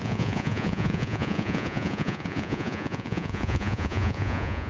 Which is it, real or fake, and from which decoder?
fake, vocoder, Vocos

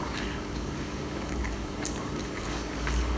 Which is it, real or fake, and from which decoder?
fake, codec, DAC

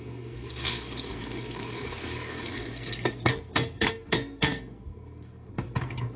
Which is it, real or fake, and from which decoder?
fake, codec, SNAC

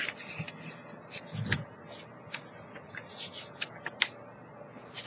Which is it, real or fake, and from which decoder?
real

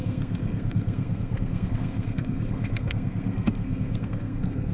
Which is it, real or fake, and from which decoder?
fake, codec, SNAC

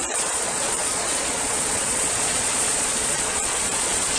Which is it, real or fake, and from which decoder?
fake, vocoder, Vocos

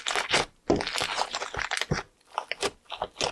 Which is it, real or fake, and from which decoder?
real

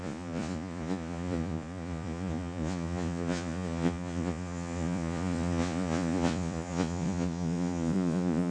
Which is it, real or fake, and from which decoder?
fake, vocoder, Vocos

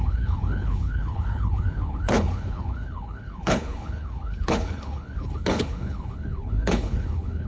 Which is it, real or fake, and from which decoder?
fake, codec, HILCodec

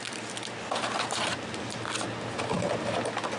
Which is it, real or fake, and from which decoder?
real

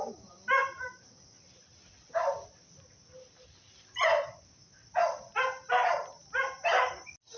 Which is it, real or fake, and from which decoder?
real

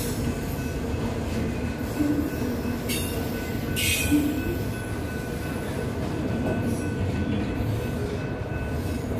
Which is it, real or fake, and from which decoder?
real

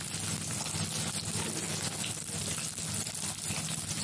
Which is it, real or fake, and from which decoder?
real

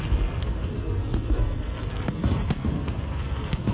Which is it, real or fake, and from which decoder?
fake, codec, SNAC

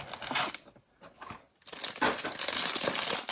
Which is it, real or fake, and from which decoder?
real